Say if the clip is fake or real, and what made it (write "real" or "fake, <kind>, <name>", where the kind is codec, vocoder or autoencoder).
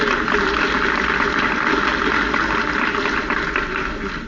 real